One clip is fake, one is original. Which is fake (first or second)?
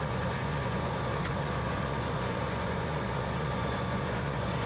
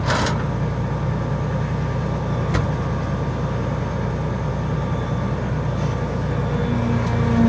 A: first